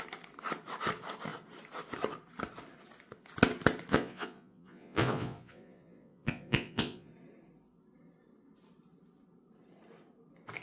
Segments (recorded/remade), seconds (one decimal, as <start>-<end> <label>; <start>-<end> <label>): 0.0-3.9 recorded; 3.9-7.1 remade; 7.1-10.6 recorded